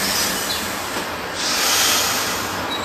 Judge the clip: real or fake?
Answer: real